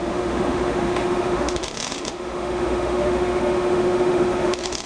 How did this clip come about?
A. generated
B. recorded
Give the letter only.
A